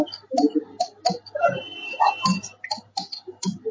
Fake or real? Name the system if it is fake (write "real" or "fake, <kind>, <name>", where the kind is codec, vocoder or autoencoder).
fake, vocoder, BigVGAN v2